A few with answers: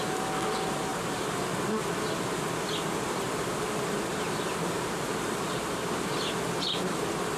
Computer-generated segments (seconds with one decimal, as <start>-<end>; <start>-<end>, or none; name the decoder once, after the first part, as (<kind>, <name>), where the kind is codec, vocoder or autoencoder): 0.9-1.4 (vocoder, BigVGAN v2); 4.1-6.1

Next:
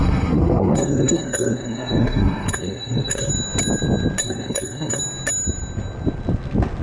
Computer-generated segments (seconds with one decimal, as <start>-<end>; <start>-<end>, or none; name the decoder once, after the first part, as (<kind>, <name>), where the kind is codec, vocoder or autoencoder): 0.0-3.3 (codec, SNAC); 4.2-5.0

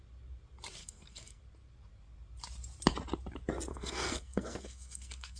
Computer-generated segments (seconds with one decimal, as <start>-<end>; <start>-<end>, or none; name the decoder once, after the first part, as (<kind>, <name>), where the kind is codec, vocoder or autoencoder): 0.8-1.4 (codec, SNAC); 3.7-5.4

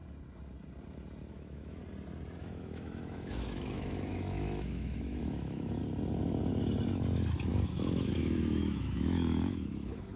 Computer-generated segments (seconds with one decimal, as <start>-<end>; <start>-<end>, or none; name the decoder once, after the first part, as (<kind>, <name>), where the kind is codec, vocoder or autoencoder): 1.3-1.8 (autoencoder, DAC-VAE); 2.4-5.8; 7.5-10.2

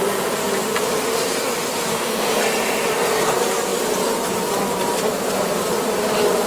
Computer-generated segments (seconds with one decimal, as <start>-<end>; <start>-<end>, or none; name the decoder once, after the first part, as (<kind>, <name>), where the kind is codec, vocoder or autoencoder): 1.9-2.4 (codec, DAC)